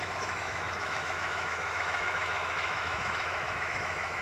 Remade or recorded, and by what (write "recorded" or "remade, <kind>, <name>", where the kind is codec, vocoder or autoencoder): remade, autoencoder, DAC-VAE